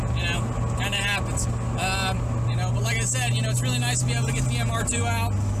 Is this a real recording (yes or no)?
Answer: yes